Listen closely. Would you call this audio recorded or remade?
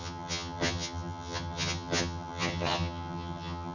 remade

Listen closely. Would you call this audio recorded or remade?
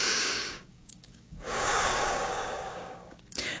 remade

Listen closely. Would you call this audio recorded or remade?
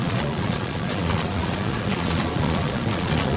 remade